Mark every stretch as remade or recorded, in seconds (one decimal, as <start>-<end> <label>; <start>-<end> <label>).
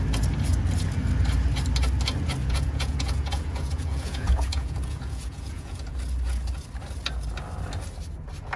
0.0-2.4 recorded; 2.4-5.9 remade; 5.9-8.6 recorded